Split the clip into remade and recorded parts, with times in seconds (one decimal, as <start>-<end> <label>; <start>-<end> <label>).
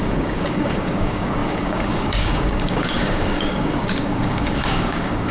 0.0-5.3 remade